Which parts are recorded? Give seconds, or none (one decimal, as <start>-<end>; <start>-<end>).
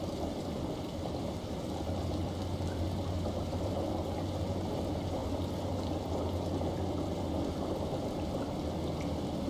0.0-9.5